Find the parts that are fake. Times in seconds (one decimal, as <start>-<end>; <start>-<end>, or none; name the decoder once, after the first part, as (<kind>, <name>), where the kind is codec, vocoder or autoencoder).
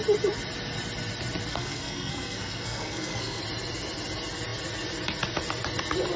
1.5-3.4 (codec, SNAC)